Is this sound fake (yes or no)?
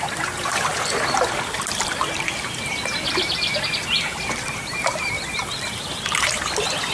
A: yes